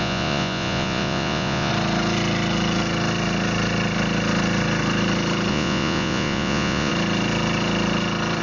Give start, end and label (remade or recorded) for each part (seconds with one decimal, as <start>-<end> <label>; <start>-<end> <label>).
0.0-1.7 remade; 1.7-5.5 recorded; 5.5-6.9 remade; 6.9-8.4 recorded